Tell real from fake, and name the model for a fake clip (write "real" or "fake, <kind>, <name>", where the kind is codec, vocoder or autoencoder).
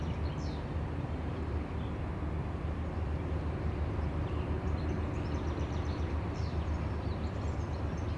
real